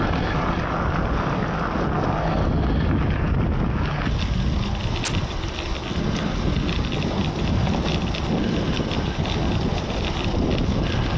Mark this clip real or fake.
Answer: real